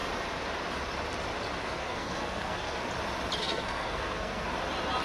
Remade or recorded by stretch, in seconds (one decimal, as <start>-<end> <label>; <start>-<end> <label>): 0.0-1.6 recorded; 1.6-2.9 remade; 2.9-3.4 recorded; 3.4-4.5 remade; 4.5-5.0 recorded